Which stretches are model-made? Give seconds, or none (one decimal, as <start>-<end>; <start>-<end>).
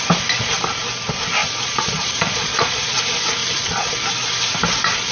1.4-3.0; 3.4-3.9